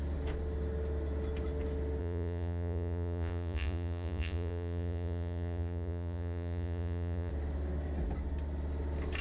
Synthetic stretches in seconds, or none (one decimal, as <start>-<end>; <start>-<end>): 2.0-7.3